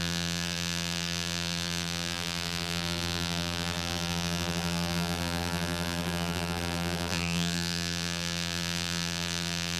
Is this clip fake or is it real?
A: fake